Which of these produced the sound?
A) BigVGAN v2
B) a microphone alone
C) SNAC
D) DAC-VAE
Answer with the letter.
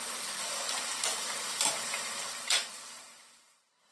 A